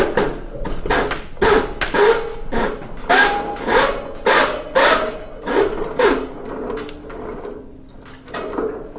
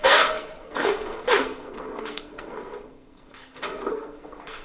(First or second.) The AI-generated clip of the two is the second